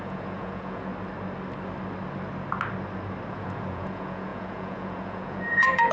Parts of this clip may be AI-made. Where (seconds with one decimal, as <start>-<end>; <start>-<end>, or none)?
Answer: 0.0-0.9; 3.3-5.9